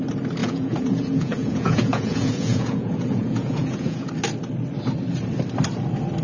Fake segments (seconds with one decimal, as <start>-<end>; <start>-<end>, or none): 0.4-4.1